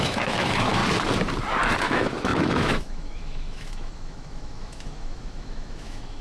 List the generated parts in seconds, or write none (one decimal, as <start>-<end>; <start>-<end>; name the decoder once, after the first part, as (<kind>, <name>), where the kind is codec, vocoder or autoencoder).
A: 0.0-0.8 (autoencoder, DAC-VAE); 1.8-6.2